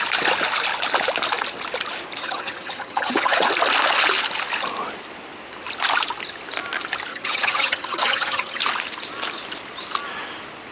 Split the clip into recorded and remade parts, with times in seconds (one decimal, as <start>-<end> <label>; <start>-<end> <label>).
0.0-2.2 recorded; 2.2-3.5 remade; 3.5-7.1 recorded; 7.1-8.6 remade; 8.6-10.7 recorded